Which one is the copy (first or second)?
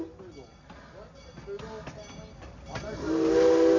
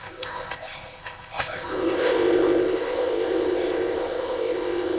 second